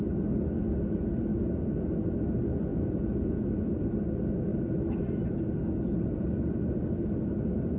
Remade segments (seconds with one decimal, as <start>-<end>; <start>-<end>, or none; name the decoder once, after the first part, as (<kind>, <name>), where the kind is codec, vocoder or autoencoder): 2.7-3.4 (vocoder, Vocos)